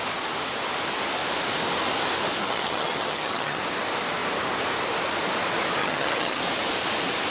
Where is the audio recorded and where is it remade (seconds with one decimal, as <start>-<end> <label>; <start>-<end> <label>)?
0.0-2.4 recorded; 2.4-3.6 remade; 3.6-5.8 recorded; 5.8-6.4 remade; 6.4-7.3 recorded